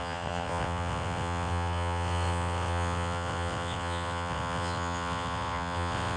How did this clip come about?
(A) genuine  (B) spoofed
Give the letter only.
B